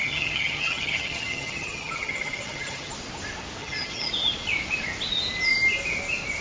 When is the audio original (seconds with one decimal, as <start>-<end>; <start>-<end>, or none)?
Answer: 2.9-3.6; 4.1-6.4